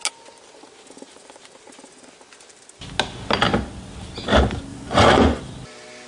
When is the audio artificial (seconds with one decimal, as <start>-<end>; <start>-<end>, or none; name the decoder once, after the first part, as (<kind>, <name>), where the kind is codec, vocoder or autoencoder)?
4.7-5.4 (vocoder, Vocos)